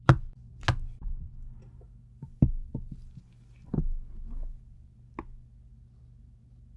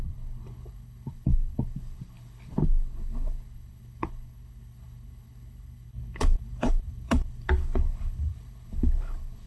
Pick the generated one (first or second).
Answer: second